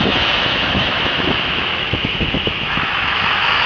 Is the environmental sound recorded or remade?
remade